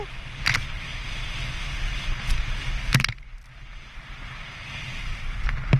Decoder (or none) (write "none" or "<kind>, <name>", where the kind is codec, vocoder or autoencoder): none